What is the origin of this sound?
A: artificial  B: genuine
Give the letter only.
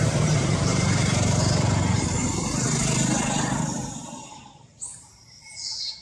A